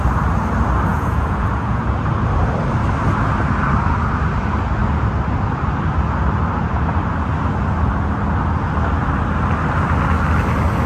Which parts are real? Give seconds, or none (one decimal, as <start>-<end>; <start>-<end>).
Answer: 0.0-0.9; 2.0-10.9